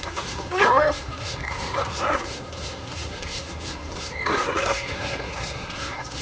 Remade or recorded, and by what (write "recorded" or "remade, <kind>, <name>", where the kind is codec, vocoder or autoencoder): remade, codec, SNAC